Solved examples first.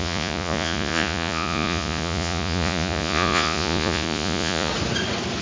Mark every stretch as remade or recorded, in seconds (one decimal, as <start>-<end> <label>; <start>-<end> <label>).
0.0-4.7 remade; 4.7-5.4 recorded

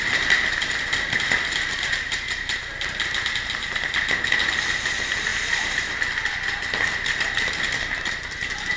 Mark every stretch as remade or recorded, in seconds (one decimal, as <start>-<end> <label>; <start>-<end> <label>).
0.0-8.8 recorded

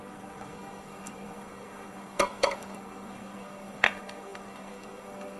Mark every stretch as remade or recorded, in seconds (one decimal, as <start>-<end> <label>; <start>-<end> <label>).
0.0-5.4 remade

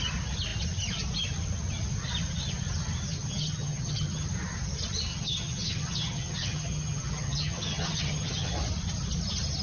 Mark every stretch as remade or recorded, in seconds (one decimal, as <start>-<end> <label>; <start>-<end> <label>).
0.0-3.2 recorded; 3.2-4.3 remade; 4.3-5.1 recorded; 5.1-8.5 remade; 8.5-9.6 recorded

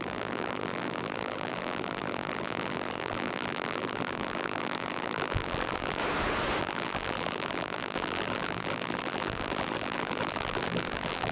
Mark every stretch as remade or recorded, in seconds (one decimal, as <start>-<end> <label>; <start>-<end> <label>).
0.0-6.0 remade; 6.0-6.6 recorded; 6.6-11.3 remade

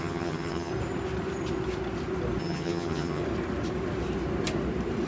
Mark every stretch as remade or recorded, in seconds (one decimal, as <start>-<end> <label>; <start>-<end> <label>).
0.0-0.7 remade; 0.7-2.4 recorded; 2.4-3.2 remade; 3.2-5.1 recorded

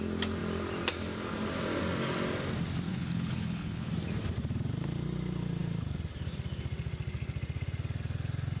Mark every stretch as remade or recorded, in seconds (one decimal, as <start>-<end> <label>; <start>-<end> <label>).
0.0-2.9 recorded; 2.9-3.9 remade; 3.9-8.6 recorded

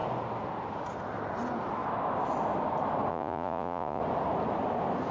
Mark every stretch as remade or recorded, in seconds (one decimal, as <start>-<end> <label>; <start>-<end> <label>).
0.0-3.1 recorded; 3.1-4.0 remade; 4.0-5.1 recorded